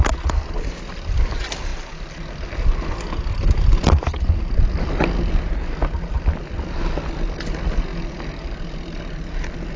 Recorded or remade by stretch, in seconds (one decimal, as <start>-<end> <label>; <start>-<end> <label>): 0.0-9.8 recorded